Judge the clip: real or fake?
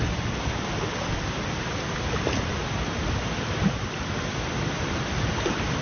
real